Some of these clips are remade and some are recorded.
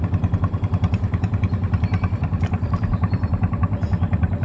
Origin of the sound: remade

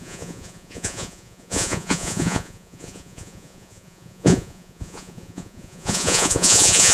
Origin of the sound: remade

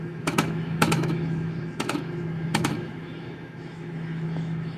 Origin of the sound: remade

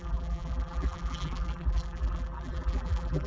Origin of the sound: remade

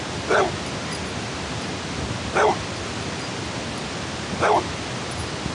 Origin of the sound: recorded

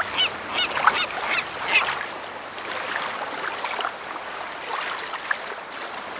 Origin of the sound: recorded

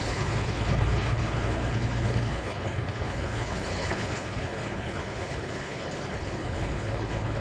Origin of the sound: remade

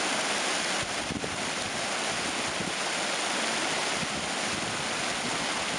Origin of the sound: recorded